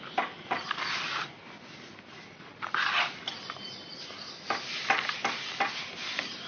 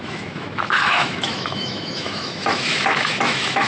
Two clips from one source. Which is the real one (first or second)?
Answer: first